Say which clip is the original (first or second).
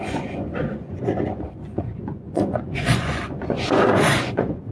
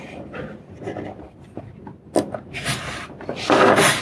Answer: second